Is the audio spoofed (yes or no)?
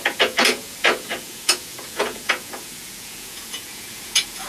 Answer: yes